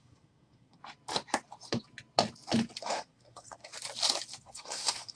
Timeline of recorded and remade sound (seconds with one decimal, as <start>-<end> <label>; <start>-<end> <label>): 0.0-0.8 remade; 0.8-2.8 recorded; 2.8-3.7 remade; 3.7-4.4 recorded; 4.4-5.2 remade